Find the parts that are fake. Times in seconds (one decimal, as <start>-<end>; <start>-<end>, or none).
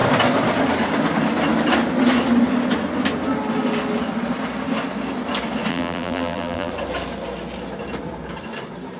5.7-6.7